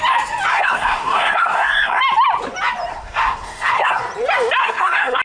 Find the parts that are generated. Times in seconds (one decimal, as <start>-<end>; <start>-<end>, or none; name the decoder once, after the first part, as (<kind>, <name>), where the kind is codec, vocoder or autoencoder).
0.5-2.0 (codec, SNAC); 2.9-4.0; 4.6-5.2